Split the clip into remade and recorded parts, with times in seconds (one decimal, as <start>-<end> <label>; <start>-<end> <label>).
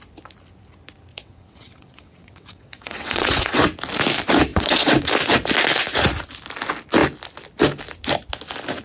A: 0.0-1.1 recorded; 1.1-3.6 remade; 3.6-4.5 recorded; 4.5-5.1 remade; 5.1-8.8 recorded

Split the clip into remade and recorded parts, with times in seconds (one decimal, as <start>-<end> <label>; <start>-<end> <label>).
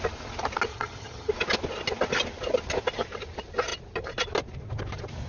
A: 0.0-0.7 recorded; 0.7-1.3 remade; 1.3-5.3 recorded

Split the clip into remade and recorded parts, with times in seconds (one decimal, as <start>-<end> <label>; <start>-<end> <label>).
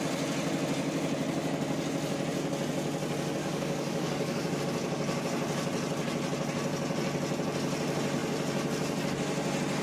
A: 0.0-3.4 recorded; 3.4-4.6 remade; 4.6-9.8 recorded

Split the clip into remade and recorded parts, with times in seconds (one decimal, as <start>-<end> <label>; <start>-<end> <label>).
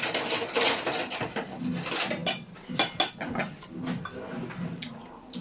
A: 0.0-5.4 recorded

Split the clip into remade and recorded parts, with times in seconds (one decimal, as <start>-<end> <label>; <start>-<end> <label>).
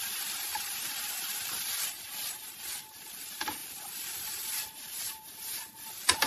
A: 0.0-6.3 remade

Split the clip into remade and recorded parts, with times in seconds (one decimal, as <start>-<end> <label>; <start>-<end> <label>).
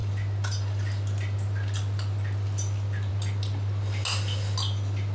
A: 0.0-5.1 recorded